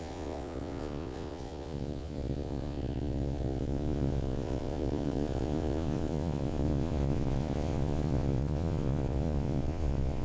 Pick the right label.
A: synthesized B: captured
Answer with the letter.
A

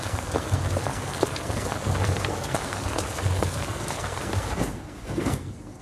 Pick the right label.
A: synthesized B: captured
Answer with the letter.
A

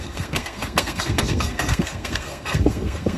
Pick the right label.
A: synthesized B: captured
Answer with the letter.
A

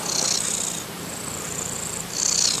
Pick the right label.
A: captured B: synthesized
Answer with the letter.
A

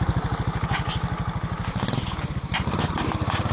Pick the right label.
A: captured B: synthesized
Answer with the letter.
A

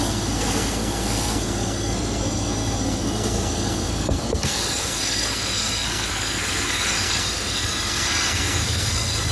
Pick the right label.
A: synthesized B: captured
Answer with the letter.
A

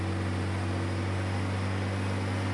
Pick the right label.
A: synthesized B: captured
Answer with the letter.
B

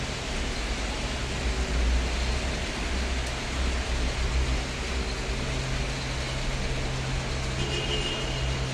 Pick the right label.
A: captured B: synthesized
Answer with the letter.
A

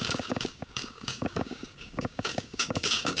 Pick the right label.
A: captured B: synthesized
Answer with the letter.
B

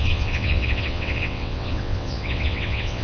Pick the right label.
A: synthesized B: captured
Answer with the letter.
A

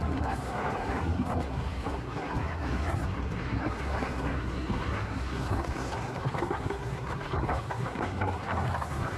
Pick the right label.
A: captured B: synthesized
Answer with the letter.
B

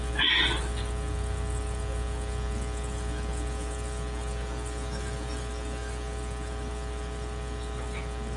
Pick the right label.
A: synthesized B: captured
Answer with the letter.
B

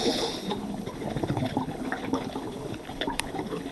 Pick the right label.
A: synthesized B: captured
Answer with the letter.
A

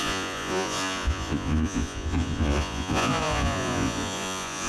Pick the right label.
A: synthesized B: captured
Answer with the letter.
A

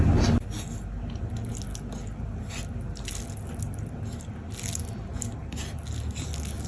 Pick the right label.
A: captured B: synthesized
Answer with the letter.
A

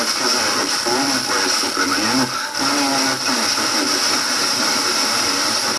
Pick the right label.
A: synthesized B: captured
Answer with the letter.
B